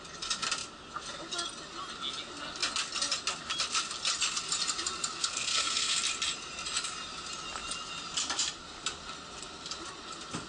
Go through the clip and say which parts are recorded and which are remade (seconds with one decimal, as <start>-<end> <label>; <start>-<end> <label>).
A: 0.0-5.2 recorded; 5.2-6.0 remade; 6.0-10.5 recorded